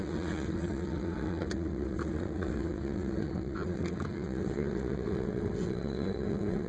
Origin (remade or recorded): remade